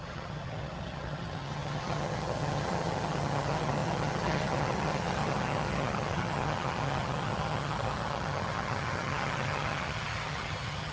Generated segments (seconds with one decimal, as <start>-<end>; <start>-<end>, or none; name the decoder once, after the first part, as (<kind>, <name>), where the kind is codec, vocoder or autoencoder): 0.0-10.9 (vocoder, HiFi-GAN)